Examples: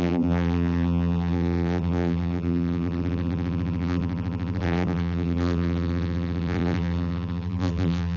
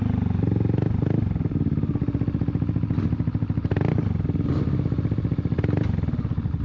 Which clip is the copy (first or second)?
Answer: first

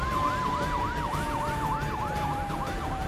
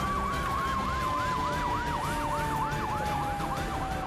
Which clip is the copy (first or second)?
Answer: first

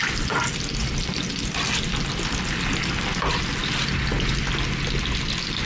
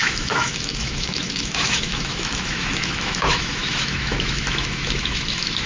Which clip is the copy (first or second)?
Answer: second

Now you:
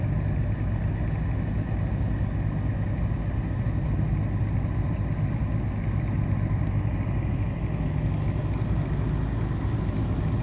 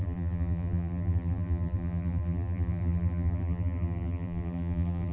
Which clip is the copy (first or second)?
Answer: second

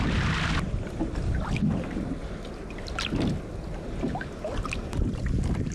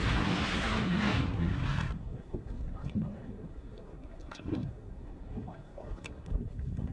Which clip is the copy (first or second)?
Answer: second